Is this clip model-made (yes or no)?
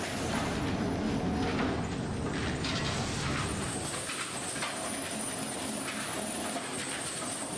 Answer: no